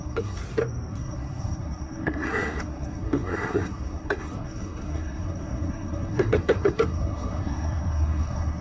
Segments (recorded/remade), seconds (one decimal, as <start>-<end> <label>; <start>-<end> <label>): 0.0-0.4 remade; 0.4-0.9 recorded; 0.9-8.6 remade